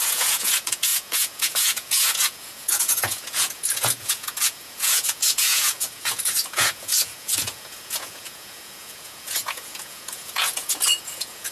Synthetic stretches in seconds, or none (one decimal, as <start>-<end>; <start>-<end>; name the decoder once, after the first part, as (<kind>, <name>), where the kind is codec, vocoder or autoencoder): 0.0-11.5 (vocoder, Vocos)